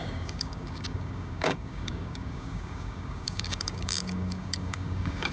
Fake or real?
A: fake